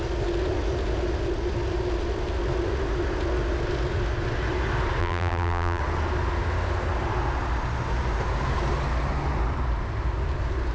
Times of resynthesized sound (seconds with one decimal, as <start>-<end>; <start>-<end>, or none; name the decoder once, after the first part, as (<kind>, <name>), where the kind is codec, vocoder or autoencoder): 5.0-5.8 (vocoder, BigVGAN v2)